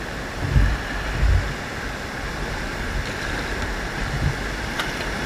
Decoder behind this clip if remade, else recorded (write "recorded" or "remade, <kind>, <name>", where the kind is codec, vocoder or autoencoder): recorded